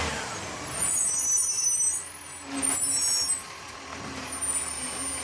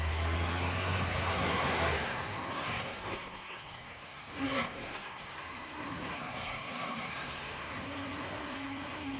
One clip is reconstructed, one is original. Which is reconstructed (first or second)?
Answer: second